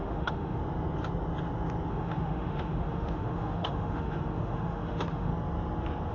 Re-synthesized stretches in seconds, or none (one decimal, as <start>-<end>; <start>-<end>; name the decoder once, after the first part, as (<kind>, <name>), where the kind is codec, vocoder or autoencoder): 0.0-0.6 (autoencoder, DAC-VAE); 1.9-5.3